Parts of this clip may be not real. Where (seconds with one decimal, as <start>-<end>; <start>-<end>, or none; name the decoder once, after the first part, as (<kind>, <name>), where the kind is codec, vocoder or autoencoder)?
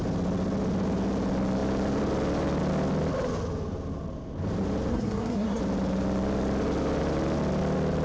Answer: 4.9-5.6 (codec, SNAC)